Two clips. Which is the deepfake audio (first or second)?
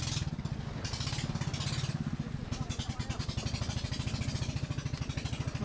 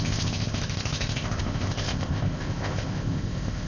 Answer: second